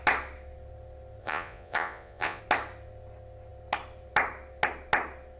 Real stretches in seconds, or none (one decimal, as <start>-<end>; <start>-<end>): 0.0-1.2; 2.4-5.4